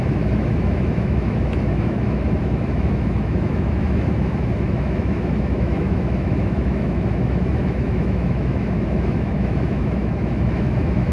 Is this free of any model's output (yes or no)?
no